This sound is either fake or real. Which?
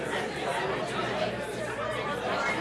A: fake